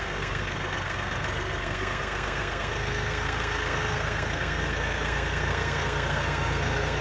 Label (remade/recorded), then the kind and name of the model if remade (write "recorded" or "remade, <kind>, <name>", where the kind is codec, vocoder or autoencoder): remade, codec, SNAC